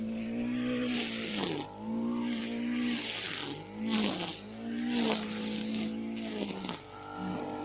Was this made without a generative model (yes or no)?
yes